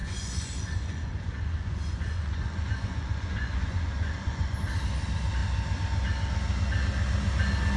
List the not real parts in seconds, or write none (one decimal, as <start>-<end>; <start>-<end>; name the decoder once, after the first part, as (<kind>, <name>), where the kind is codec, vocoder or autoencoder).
0.0-4.6 (vocoder, Vocos)